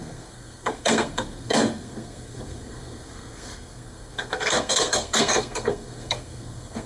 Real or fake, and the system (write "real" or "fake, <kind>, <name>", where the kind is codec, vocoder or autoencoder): fake, codec, SNAC